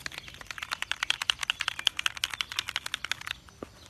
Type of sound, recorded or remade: recorded